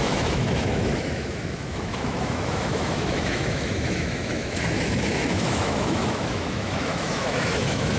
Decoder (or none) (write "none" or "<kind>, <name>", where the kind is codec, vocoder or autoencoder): autoencoder, DAC-VAE